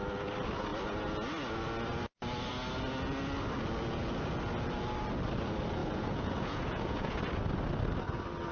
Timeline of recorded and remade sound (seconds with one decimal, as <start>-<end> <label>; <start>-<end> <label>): 0.0-5.8 recorded; 5.8-7.2 remade; 7.2-8.5 recorded